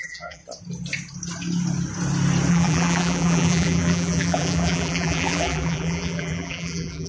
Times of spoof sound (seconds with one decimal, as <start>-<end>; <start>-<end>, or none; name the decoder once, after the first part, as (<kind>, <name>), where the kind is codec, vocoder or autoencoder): 0.0-0.4 (vocoder, BigVGAN v2); 2.5-7.1